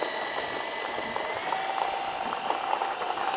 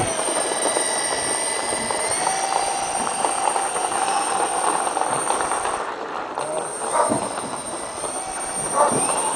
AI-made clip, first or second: first